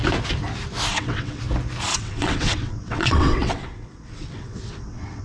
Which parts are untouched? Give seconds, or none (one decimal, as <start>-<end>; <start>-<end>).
0.0-0.9; 1.4-1.9